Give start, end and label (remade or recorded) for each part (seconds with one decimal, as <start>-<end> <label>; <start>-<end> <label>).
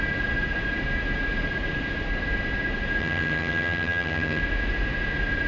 0.0-3.0 recorded; 3.0-4.4 remade; 4.4-5.5 recorded